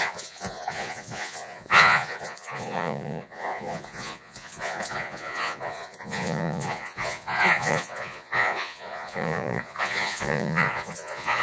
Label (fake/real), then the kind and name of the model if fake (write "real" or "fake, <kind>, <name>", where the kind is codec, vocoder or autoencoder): fake, vocoder, Vocos